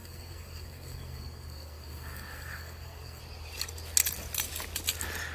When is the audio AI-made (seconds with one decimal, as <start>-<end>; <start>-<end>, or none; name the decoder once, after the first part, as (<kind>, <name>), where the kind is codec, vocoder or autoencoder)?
0.0-3.2 (codec, SNAC)